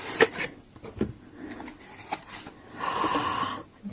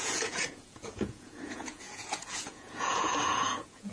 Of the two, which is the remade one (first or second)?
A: second